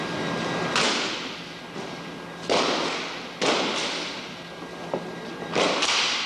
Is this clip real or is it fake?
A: real